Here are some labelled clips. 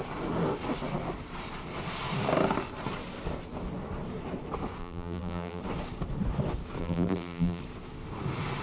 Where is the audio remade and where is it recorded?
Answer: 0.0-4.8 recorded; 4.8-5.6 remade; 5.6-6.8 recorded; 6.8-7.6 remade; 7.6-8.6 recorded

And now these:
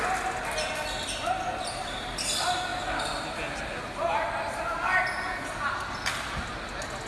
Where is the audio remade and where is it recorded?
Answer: 0.0-7.1 recorded

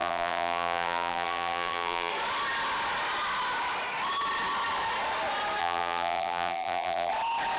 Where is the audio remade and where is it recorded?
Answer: 0.0-2.1 remade; 2.1-5.6 recorded; 5.6-7.1 remade; 7.1-7.6 recorded

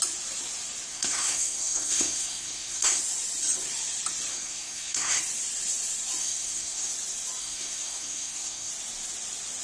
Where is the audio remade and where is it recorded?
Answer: 0.0-0.9 recorded; 0.9-3.0 remade; 3.0-4.3 recorded; 4.3-5.2 remade; 5.2-6.2 recorded; 6.2-6.9 remade; 6.9-7.4 recorded; 7.4-8.7 remade; 8.7-9.6 recorded

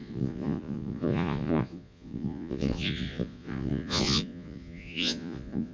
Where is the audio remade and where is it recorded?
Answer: 0.0-5.7 remade

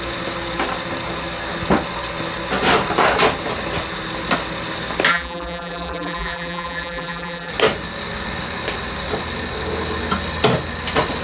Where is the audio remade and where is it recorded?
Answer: 0.0-5.1 recorded; 5.1-7.5 remade; 7.5-11.2 recorded

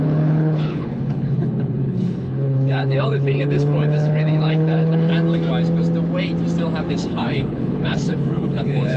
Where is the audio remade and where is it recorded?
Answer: 0.0-5.1 remade; 5.1-6.9 recorded; 6.9-9.0 remade

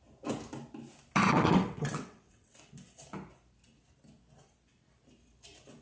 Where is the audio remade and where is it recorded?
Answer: 0.0-1.2 recorded; 1.2-2.6 remade; 2.6-5.8 recorded